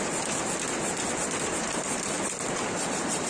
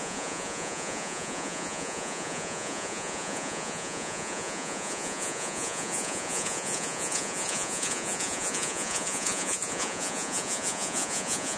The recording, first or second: first